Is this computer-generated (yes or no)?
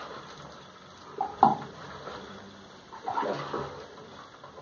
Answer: no